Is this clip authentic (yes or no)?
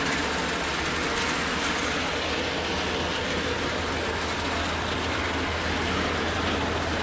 yes